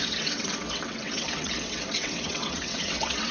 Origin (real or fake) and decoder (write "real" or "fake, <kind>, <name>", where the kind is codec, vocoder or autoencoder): fake, vocoder, WaveNeXt